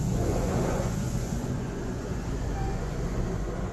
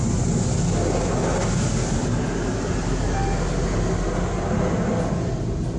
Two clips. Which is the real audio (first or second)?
second